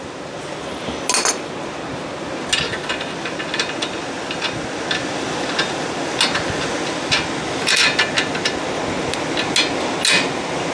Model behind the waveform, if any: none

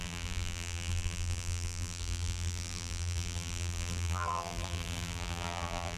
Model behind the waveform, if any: vocoder, BigVGAN v2